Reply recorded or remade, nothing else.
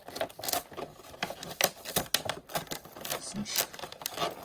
recorded